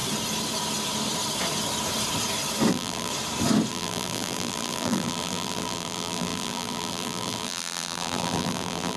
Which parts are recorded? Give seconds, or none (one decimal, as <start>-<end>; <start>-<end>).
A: 0.0-2.7; 3.1-3.7